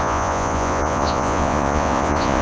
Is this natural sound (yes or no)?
no